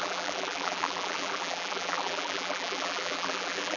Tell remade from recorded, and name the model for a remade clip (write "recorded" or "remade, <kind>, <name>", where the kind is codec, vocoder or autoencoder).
remade, vocoder, BigVGAN v2